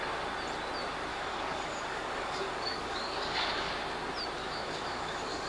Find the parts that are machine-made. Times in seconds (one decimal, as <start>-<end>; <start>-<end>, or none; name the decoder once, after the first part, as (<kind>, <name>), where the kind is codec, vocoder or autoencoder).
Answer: 1.1-3.7 (codec, DAC); 4.4-5.5